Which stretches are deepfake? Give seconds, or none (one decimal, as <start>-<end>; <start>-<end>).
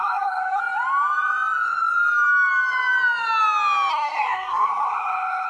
0.0-0.6; 3.9-5.5